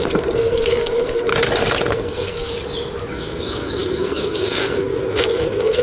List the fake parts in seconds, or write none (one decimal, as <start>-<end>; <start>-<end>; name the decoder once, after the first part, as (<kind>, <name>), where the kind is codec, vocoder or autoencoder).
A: 0.0-1.3 (codec, SNAC); 1.9-2.5; 3.1-5.8